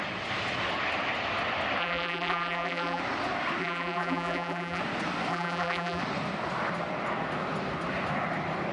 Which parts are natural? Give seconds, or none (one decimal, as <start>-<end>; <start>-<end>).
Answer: 0.0-1.8; 3.0-3.6; 4.8-5.3; 6.0-8.7